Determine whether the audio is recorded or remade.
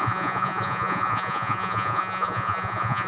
remade